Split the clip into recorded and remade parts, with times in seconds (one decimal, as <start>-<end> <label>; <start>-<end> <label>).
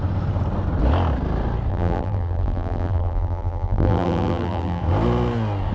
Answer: 0.0-1.7 recorded; 1.7-4.8 remade; 4.8-5.7 recorded